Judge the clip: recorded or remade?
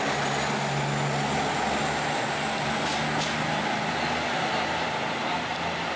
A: recorded